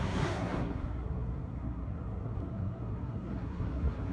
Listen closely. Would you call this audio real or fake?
fake